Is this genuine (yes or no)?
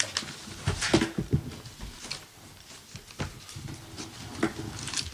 yes